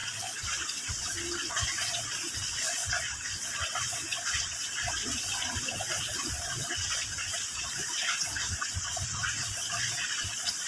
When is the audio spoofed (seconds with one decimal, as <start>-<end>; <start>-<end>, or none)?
0.0-10.7